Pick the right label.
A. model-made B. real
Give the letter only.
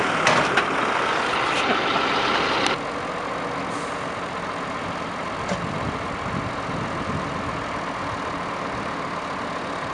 B